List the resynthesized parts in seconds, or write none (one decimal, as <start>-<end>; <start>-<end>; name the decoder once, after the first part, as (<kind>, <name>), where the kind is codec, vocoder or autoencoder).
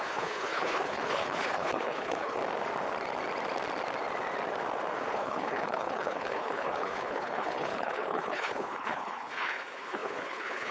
0.0-2.4 (codec, HILCodec); 5.1-10.7